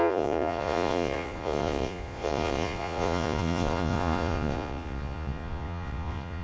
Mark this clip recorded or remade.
remade